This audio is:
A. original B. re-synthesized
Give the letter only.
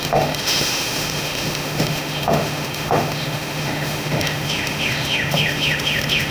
B